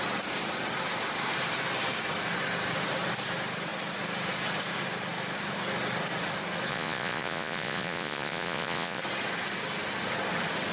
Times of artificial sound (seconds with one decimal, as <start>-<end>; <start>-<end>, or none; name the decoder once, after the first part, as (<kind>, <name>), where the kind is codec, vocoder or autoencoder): 6.7-9.0 (vocoder, Vocos)